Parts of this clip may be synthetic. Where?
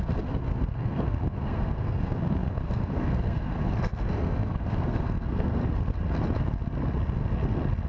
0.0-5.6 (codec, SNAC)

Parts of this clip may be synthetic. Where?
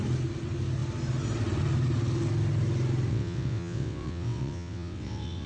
3.1-5.5 (vocoder, WaveNeXt)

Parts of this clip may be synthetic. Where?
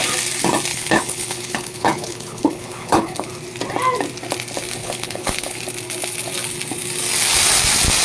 0.7-3.3 (codec, HILCodec); 4.8-5.6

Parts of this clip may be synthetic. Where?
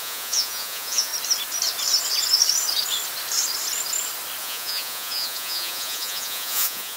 0.0-1.1 (vocoder, Vocos); 4.4-7.0